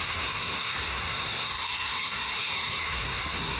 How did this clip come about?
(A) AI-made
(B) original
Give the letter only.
A